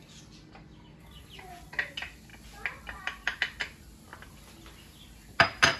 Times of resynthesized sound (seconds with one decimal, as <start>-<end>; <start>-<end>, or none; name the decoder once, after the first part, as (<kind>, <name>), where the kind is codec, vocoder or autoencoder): 4.1-4.6 (vocoder, BigVGAN v2)